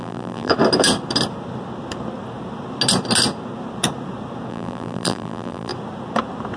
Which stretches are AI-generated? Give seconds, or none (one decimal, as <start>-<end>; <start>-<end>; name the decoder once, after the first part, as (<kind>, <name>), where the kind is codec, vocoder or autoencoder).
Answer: 0.0-0.5 (vocoder, BigVGAN v2); 4.5-5.7